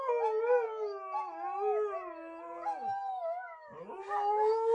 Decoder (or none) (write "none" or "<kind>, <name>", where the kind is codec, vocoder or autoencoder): none